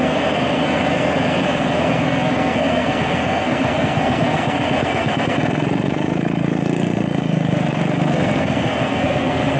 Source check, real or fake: fake